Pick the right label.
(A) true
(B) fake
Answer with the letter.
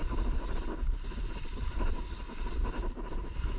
A